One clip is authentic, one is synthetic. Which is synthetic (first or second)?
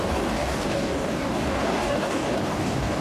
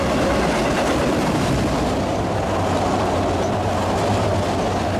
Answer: first